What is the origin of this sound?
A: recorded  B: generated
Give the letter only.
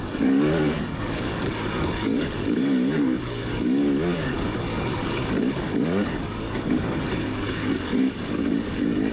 B